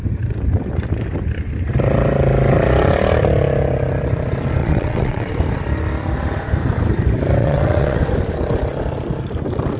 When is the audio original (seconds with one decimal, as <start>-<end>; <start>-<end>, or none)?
0.0-4.6; 5.3-7.4; 8.0-9.8